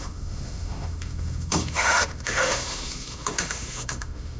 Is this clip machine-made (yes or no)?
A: yes